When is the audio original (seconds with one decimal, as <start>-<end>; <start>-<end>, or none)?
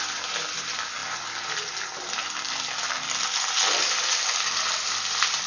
0.0-5.5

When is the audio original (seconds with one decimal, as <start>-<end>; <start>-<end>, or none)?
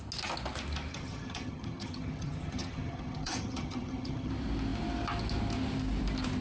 0.0-0.9; 4.3-6.4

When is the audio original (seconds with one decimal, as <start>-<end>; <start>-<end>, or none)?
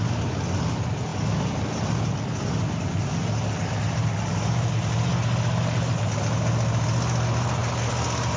0.0-8.4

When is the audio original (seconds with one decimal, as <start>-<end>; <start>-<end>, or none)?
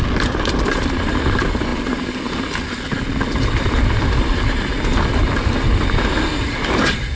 0.0-7.2